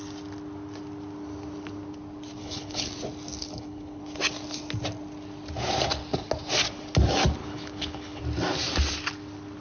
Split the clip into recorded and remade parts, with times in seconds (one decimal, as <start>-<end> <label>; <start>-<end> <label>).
0.0-2.4 recorded; 2.4-2.9 remade; 2.9-3.4 recorded; 3.4-4.0 remade; 4.0-7.4 recorded; 7.4-8.2 remade; 8.2-9.6 recorded